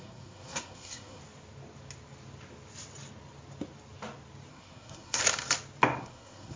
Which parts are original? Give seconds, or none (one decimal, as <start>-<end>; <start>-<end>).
1.2-4.5; 5.2-6.0